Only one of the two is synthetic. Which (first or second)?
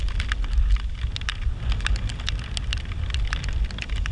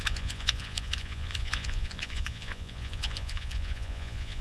second